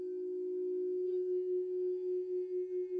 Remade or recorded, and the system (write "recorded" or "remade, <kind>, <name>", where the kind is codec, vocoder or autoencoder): recorded